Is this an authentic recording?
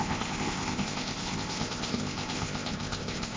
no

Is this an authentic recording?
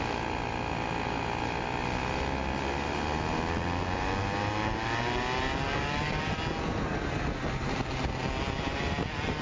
yes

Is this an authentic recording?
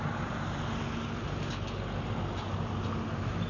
yes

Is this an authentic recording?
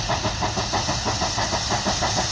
yes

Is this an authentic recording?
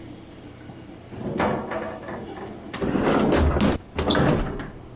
yes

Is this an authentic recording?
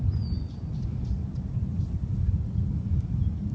yes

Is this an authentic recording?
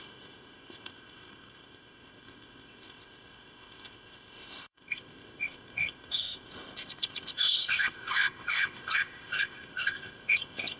no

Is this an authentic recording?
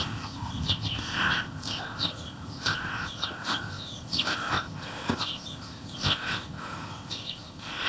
no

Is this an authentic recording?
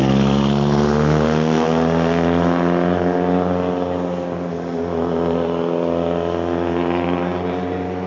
yes